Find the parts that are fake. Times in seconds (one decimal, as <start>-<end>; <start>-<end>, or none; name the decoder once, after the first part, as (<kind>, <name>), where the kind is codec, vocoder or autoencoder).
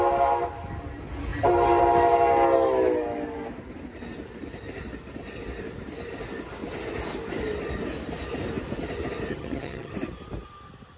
9.3-9.9 (vocoder, HiFi-GAN)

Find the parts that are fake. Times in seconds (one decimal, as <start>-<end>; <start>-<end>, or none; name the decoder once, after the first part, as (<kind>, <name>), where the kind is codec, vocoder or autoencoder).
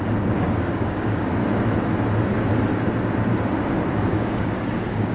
0.0-1.4 (codec, DAC); 4.1-5.1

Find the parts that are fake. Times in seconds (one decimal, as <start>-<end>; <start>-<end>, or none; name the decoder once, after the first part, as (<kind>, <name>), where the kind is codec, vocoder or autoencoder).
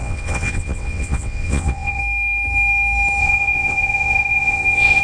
0.0-2.0 (vocoder, WaveNeXt); 3.2-5.0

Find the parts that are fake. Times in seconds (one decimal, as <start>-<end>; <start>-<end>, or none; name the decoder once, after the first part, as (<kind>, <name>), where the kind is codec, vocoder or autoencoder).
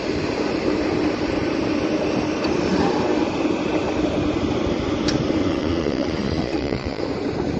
5.4-7.0 (vocoder, Vocos)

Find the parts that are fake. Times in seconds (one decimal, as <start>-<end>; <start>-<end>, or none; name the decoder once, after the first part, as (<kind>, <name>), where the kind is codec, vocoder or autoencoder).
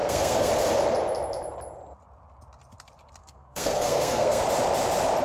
0.0-0.5 (codec, SNAC); 3.2-4.4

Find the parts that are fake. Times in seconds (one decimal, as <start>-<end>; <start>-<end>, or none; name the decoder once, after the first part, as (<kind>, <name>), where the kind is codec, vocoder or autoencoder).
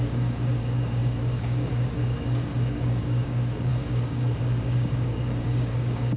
0.0-6.2 (codec, DAC)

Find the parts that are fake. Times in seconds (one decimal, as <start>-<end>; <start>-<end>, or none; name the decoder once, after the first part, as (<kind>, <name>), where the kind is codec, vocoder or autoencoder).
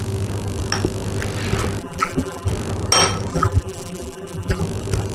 1.8-2.5 (vocoder, BigVGAN v2); 3.3-4.6